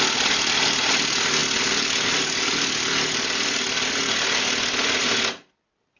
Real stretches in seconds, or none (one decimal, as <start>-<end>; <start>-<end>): 0.0-6.0